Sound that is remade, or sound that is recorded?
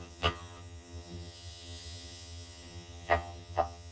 remade